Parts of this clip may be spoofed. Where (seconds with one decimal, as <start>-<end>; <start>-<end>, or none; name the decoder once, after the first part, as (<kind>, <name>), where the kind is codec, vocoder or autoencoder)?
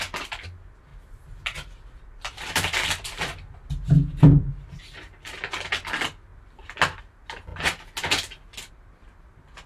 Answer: 0.9-4.8 (vocoder, BigVGAN v2)